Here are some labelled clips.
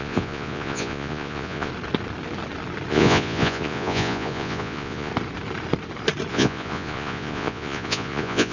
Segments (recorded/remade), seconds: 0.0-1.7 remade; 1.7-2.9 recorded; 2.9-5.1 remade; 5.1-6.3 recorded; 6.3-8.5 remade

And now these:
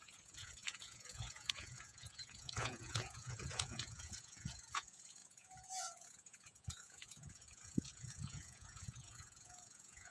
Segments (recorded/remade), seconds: 0.0-10.1 remade

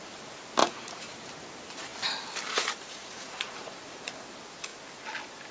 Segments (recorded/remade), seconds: 0.0-0.6 recorded; 0.6-1.3 remade; 1.3-3.0 recorded; 3.0-4.1 remade; 4.1-5.5 recorded

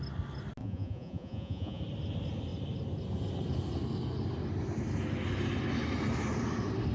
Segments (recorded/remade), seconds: 0.0-0.6 recorded; 0.6-1.8 remade; 1.8-6.9 recorded

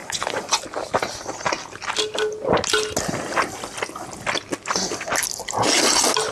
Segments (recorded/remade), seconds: 0.0-0.6 remade; 0.6-6.3 recorded